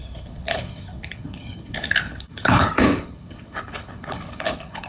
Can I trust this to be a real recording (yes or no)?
no